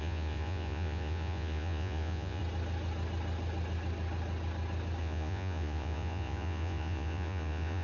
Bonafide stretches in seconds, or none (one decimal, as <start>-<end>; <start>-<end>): 2.4-5.0